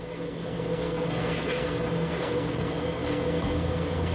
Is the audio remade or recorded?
remade